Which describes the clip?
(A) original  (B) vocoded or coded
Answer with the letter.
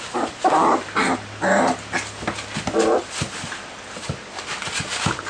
A